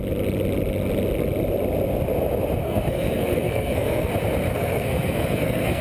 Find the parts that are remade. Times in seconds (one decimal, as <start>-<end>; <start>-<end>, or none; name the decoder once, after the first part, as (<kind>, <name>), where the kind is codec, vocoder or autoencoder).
2.6-4.1 (codec, SNAC); 4.5-5.8